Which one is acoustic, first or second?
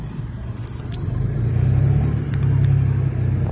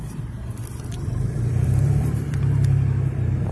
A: first